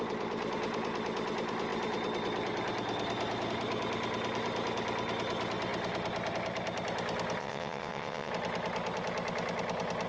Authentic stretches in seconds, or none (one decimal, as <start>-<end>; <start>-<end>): 0.0-7.4; 8.3-10.1

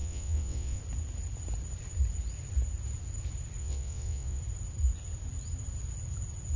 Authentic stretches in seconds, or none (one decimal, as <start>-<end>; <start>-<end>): 0.8-3.6; 4.4-6.6